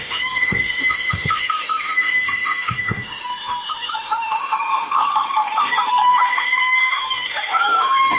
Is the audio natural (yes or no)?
no